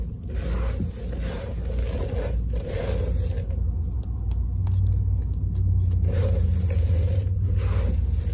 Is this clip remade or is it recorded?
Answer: recorded